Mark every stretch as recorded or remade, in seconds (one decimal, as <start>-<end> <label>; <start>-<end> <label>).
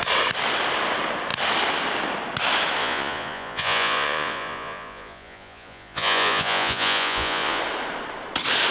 0.0-2.8 recorded; 2.8-7.6 remade; 7.6-8.7 recorded